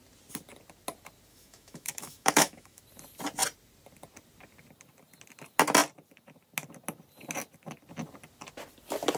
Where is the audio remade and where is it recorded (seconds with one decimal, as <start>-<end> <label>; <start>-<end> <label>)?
0.0-1.3 recorded; 1.3-2.8 remade; 2.8-9.2 recorded